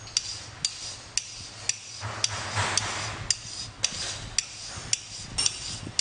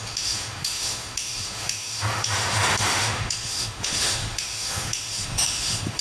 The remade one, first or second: second